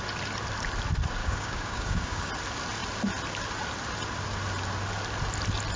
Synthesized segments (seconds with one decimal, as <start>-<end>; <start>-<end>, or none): 1.2-2.3